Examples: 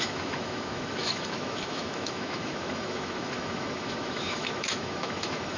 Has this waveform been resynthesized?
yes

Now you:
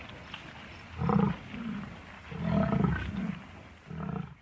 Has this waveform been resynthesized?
no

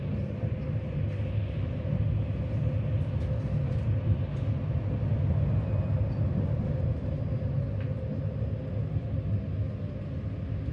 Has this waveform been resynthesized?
no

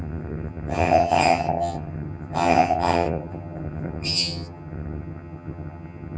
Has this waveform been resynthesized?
yes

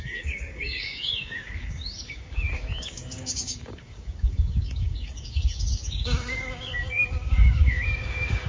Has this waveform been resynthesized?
yes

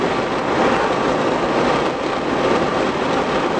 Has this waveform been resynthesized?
no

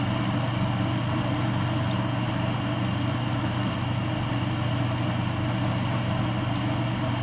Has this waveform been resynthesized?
no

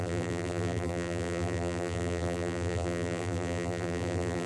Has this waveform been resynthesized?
yes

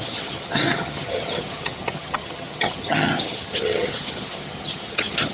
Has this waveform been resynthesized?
yes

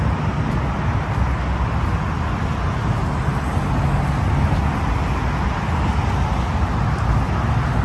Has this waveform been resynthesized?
no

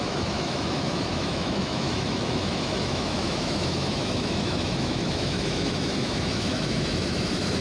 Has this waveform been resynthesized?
yes